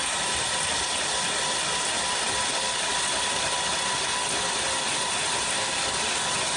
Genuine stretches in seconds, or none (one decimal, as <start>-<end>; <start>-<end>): 0.0-6.6